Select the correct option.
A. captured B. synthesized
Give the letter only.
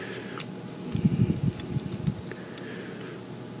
A